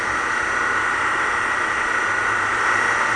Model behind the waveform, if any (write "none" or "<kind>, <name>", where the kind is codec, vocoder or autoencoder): none